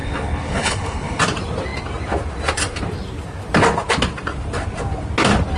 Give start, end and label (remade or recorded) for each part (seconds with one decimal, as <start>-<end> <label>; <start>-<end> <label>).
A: 0.0-1.2 remade; 1.2-5.6 recorded